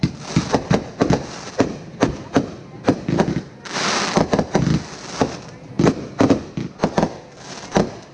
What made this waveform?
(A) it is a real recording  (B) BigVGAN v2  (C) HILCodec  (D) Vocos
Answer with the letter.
A